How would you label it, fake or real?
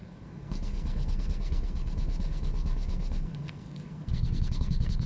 fake